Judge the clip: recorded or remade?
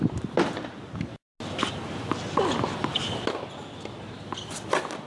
recorded